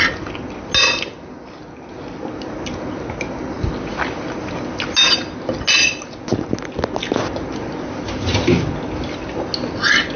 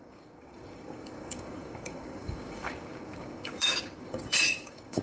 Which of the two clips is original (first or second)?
first